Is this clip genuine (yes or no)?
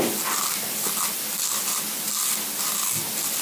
yes